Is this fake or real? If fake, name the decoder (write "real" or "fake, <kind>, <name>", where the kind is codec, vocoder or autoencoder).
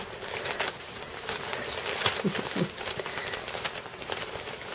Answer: real